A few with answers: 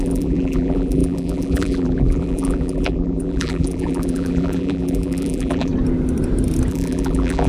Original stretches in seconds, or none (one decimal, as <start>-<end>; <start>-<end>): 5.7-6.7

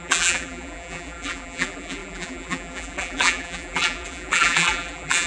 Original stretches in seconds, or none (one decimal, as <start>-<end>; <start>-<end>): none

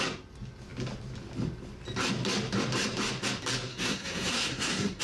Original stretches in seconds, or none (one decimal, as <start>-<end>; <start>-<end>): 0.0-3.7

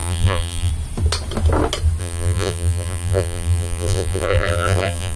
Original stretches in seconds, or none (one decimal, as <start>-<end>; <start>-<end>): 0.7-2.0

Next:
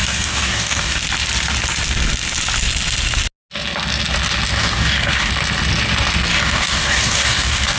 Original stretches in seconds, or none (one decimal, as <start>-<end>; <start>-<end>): 1.0-4.6; 5.3-6.3